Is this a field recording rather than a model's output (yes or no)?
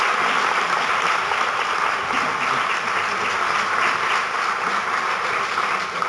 yes